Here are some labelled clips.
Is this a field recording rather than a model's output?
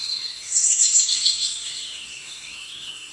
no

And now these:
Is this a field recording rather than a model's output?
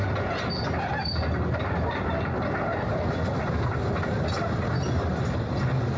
yes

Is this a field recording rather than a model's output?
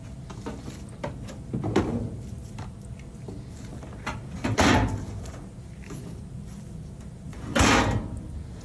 yes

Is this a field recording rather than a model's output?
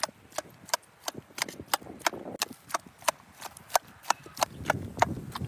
yes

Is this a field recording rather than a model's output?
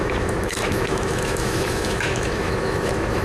no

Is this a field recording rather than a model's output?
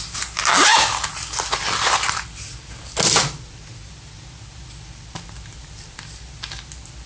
yes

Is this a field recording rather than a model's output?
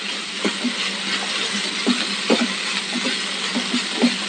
yes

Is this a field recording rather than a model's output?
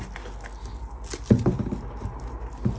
yes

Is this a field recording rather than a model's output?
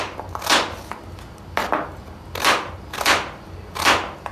yes